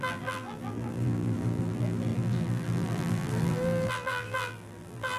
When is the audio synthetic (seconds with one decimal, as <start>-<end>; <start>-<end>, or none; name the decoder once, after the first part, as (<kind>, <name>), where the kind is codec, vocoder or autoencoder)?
0.0-5.2 (vocoder, BigVGAN v2)